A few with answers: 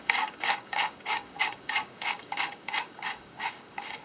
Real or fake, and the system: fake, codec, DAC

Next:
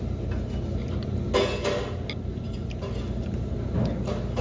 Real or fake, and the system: real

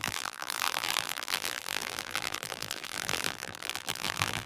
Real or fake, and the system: fake, vocoder, BigVGAN v2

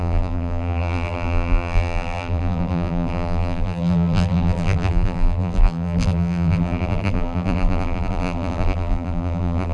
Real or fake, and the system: fake, vocoder, BigVGAN v2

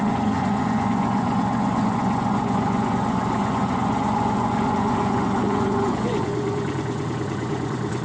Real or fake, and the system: fake, vocoder, Vocos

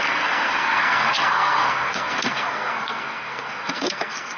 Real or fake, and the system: fake, codec, SNAC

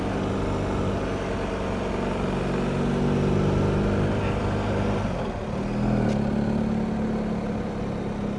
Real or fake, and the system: real